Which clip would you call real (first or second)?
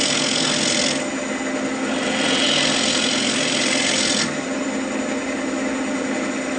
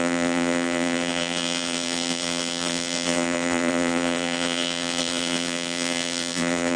first